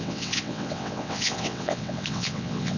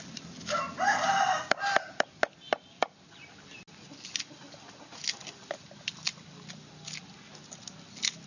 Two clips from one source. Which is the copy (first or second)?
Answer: first